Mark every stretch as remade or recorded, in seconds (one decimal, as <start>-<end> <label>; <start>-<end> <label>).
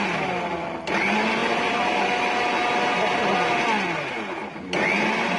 0.0-5.4 recorded